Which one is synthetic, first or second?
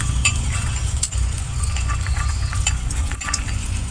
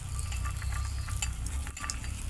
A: first